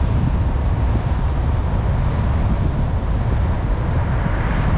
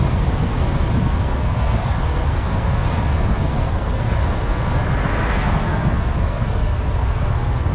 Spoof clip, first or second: second